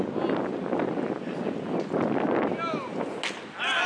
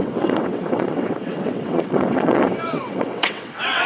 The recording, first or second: first